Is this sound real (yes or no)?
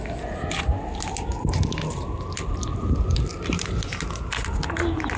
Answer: yes